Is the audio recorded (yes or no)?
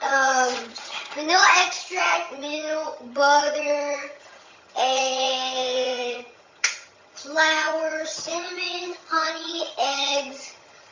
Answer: no